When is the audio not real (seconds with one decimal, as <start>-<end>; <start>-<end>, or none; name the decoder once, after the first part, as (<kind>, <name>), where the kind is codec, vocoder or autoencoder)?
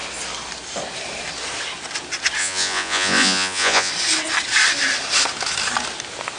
2.4-3.9 (vocoder, Vocos)